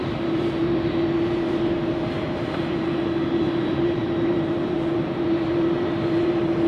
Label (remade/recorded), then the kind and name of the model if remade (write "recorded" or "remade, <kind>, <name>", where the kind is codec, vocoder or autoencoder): remade, vocoder, BigVGAN v2